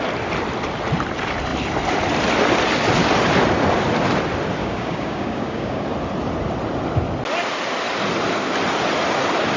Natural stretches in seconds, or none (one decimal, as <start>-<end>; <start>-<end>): 0.0-4.6; 5.8-9.6